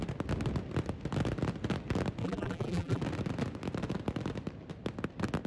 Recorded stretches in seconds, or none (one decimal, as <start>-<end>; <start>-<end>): 0.0-2.2; 3.0-5.5